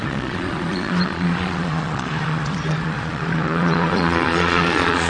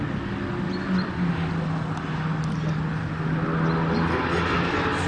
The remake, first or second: first